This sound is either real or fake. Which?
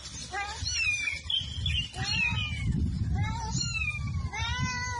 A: real